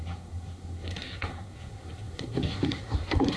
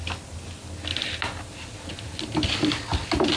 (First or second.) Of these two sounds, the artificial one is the first